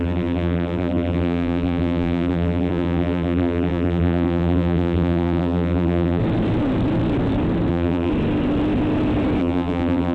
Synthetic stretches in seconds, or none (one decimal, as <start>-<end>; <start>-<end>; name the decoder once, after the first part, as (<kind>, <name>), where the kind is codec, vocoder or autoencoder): 0.0-6.2 (vocoder, BigVGAN v2); 7.7-8.1; 9.4-10.1